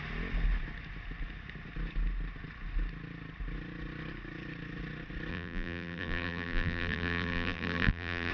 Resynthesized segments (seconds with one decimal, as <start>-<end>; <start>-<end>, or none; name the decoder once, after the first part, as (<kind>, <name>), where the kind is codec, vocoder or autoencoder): 5.3-8.3 (vocoder, BigVGAN v2)